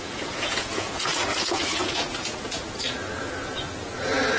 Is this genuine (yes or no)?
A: no